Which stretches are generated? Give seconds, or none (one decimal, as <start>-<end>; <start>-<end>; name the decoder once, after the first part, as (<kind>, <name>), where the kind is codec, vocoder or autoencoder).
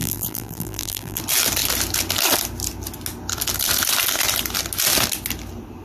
0.0-1.2 (vocoder, BigVGAN v2)